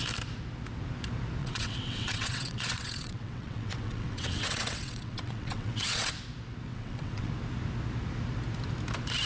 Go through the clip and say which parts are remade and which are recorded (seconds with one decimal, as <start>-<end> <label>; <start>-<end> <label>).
0.0-1.4 recorded; 1.4-6.1 remade; 6.1-6.7 recorded; 6.7-7.3 remade; 7.3-9.3 recorded